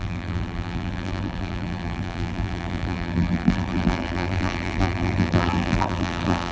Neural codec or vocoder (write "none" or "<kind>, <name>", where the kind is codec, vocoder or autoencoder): vocoder, BigVGAN v2